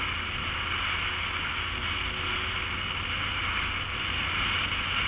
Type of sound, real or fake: real